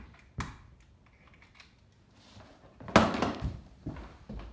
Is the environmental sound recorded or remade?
recorded